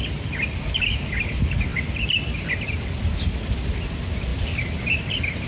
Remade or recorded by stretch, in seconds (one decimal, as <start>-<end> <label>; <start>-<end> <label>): 0.0-5.5 recorded